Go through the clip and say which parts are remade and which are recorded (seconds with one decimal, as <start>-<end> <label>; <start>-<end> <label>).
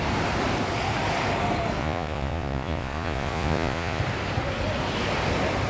0.0-1.8 recorded; 1.8-4.0 remade; 4.0-5.7 recorded